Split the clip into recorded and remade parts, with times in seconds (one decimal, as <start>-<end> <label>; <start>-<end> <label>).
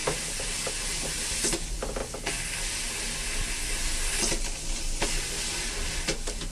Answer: 0.0-0.7 remade; 0.7-6.5 recorded